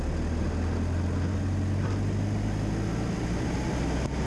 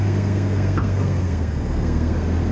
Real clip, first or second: first